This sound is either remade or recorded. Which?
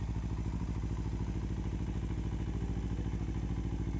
recorded